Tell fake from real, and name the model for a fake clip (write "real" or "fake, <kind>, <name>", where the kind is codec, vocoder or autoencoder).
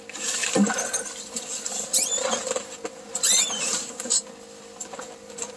real